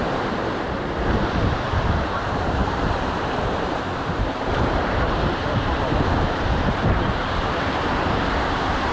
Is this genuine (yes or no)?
no